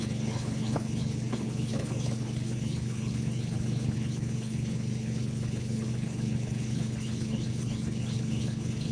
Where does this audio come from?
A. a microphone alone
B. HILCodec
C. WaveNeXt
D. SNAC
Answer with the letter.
B